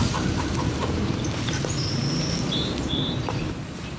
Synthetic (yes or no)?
yes